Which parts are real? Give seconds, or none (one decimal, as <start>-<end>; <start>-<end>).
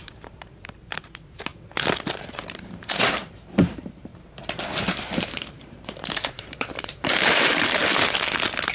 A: 1.5-2.1; 4.1-5.0; 7.8-8.7